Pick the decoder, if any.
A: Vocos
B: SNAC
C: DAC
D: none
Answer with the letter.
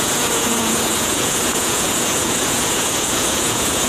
A